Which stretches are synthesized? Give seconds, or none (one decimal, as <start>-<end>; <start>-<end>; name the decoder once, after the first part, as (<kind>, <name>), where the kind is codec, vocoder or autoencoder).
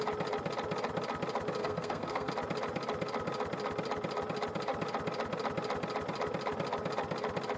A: 1.6-2.3 (codec, SNAC)